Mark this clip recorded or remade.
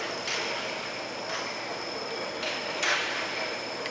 recorded